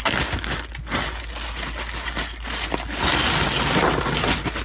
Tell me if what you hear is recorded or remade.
recorded